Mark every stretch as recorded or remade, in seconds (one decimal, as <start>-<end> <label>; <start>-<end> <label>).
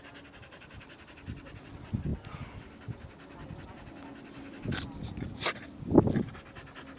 0.0-7.0 recorded